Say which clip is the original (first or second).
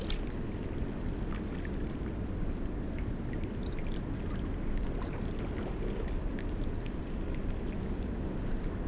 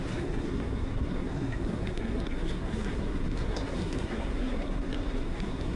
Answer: first